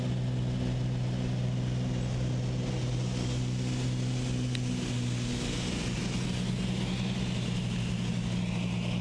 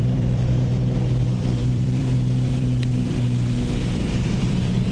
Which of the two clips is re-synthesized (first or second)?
second